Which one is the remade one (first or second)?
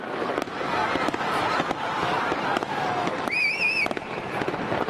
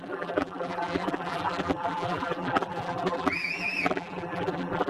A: second